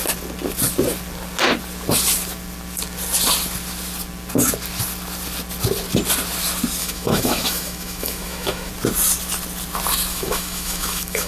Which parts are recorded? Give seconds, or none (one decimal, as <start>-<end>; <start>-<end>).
0.0-6.8; 8.7-10.1